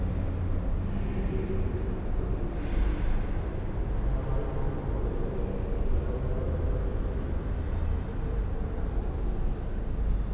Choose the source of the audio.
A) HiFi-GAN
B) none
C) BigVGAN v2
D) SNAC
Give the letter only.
B